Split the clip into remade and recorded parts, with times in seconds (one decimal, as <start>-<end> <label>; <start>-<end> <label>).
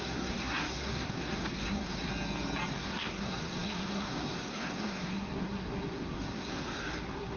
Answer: 0.0-2.1 remade; 2.1-2.7 recorded; 2.7-7.4 remade